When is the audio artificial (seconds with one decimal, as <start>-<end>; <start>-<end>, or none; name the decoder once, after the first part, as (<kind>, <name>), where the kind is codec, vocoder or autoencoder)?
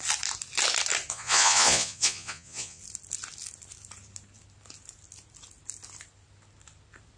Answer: 1.1-2.8 (vocoder, Vocos)